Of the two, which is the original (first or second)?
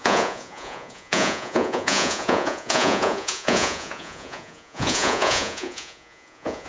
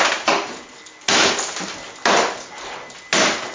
second